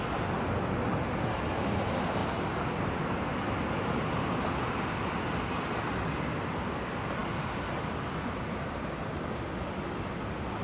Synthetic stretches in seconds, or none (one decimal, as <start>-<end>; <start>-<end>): none